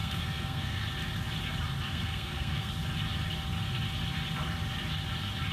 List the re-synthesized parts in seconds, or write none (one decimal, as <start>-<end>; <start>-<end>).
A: 0.0-0.8; 1.9-2.7